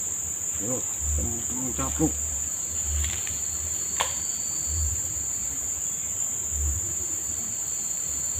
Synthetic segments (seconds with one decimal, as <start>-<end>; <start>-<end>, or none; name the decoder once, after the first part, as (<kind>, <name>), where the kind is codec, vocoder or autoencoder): 0.0-0.9 (vocoder, BigVGAN v2); 2.3-5.4; 6.4-8.4